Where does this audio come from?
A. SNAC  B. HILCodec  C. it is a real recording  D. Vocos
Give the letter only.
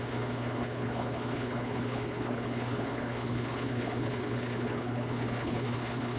B